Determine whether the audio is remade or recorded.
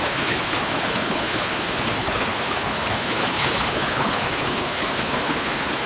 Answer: remade